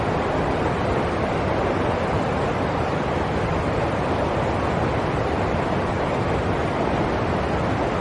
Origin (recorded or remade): recorded